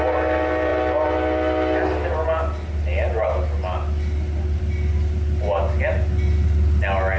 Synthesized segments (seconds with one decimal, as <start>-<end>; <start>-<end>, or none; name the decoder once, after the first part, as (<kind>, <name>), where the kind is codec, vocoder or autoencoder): none